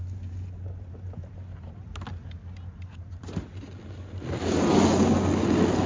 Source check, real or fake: real